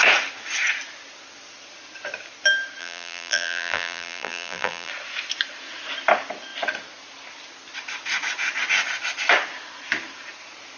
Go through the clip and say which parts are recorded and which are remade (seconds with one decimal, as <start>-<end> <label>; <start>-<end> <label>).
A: 0.0-2.8 recorded; 2.8-4.9 remade; 4.9-10.8 recorded